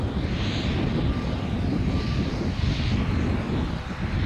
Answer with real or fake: real